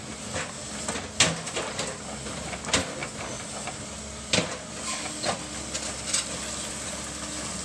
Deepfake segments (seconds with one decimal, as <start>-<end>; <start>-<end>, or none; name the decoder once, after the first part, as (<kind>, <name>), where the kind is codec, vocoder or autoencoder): none